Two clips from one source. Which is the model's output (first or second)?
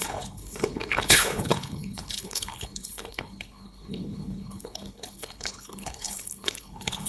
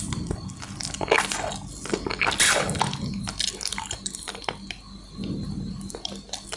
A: first